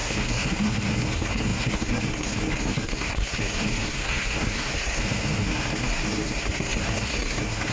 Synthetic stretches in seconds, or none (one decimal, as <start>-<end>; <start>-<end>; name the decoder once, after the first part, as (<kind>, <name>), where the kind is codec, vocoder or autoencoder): 0.0-7.7 (codec, SNAC)